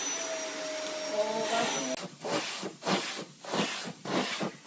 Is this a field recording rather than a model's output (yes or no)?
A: yes